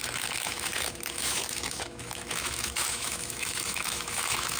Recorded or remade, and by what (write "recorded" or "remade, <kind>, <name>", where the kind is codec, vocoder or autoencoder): remade, autoencoder, DAC-VAE